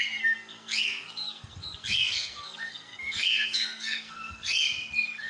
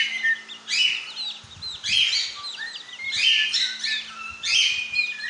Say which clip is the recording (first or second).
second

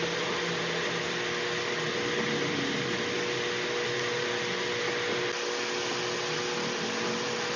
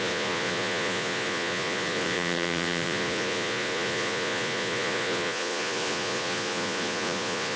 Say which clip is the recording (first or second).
first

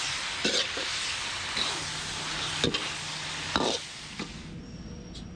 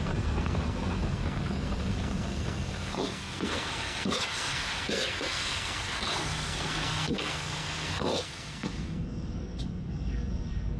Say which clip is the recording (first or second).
first